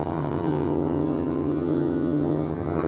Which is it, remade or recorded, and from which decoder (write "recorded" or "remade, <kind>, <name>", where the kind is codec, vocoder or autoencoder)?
remade, vocoder, HiFi-GAN